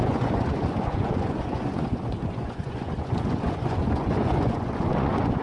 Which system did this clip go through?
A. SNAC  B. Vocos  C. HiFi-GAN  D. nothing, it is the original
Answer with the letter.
B